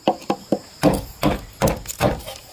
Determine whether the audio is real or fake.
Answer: real